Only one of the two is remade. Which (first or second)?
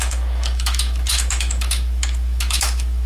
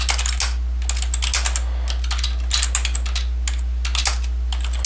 first